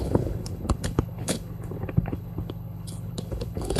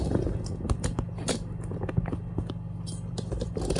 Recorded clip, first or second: second